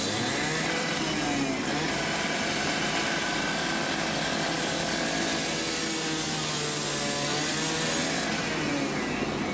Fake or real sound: real